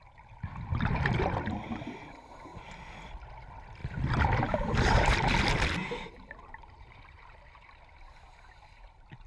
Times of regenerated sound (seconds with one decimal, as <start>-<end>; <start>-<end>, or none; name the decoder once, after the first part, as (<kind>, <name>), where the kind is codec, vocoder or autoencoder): 0.0-9.3 (vocoder, BigVGAN v2)